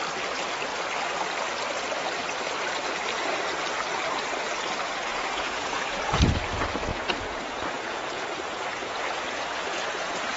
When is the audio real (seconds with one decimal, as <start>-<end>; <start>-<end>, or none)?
0.0-5.1; 6.2-6.9